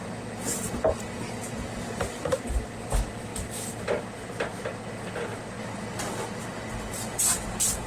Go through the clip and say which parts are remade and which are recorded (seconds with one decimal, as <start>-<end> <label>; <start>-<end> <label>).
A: 0.0-7.9 recorded